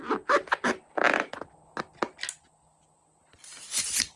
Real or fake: real